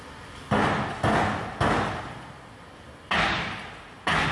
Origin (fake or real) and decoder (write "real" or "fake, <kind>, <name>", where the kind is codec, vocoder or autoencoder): real